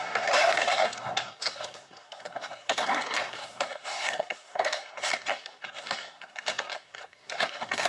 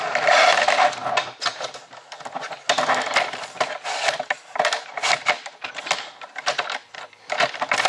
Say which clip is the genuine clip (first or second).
second